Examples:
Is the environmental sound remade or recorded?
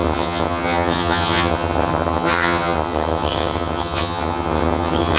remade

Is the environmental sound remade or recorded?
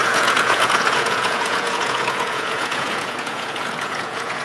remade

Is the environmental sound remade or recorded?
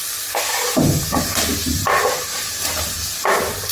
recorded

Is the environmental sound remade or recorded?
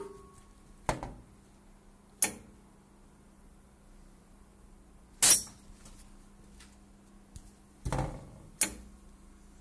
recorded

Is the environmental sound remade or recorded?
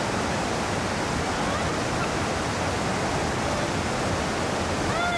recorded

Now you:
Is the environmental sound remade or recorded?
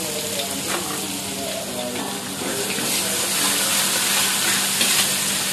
recorded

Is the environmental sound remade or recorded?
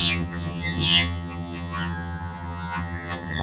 remade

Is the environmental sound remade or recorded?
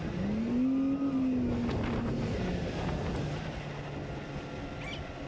recorded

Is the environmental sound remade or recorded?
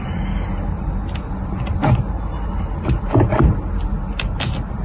recorded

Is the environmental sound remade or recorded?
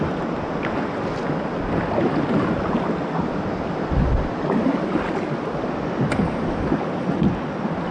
recorded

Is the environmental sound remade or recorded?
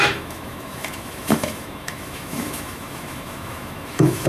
remade